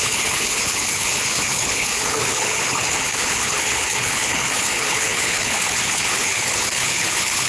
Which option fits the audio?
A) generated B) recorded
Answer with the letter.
A